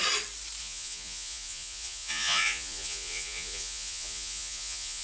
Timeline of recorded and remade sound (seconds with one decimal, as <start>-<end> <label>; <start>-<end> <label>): 0.0-0.6 recorded; 0.6-5.0 remade